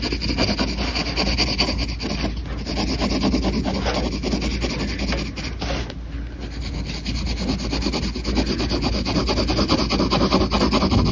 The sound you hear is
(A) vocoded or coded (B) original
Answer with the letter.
B